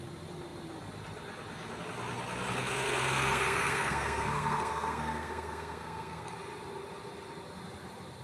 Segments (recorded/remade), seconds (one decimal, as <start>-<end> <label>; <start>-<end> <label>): 0.0-2.6 recorded; 2.6-6.3 remade; 6.3-8.2 recorded